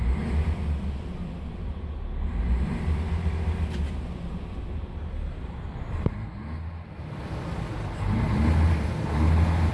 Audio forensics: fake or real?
real